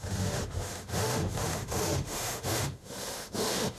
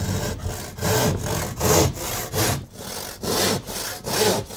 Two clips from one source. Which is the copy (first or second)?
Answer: first